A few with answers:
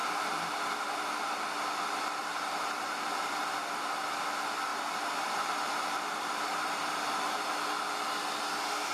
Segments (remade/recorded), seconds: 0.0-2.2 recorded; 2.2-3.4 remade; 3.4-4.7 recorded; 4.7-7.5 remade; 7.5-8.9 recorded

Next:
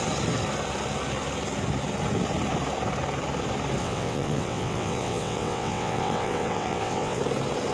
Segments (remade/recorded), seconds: 0.0-3.8 recorded; 3.8-7.2 remade; 7.2-7.7 recorded

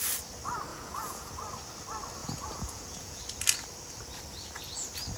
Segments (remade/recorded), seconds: 0.0-0.7 recorded; 0.7-1.3 remade; 1.3-2.2 recorded; 2.2-3.2 remade; 3.2-5.2 recorded